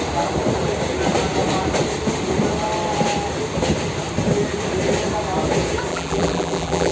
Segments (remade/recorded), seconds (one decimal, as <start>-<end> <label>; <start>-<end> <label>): 0.0-5.9 recorded; 5.9-6.9 remade